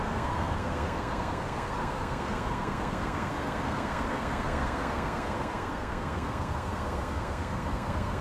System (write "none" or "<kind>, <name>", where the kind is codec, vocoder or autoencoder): codec, SNAC